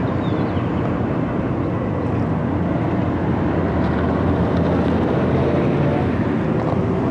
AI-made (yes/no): no